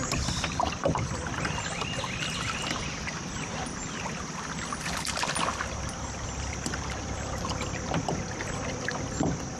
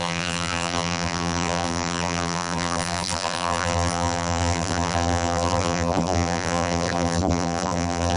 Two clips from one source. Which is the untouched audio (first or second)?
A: first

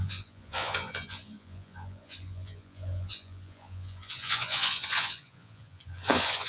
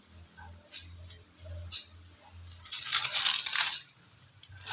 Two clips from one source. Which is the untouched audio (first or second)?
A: second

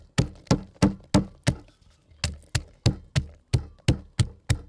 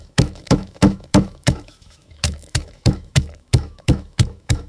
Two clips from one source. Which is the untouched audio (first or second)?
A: first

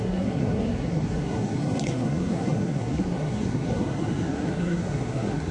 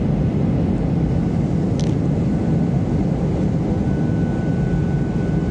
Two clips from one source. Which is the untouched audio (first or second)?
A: second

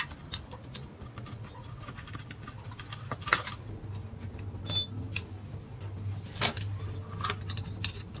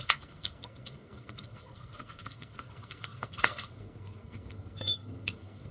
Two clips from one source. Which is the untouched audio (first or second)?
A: first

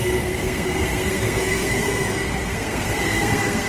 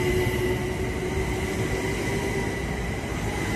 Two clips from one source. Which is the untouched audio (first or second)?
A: second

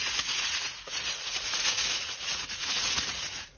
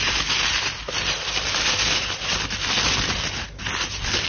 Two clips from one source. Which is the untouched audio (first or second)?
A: second